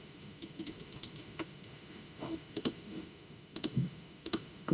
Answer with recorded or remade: remade